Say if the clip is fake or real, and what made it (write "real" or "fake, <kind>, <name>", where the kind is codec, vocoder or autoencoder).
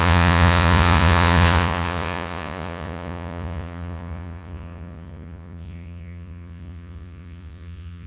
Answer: fake, vocoder, Vocos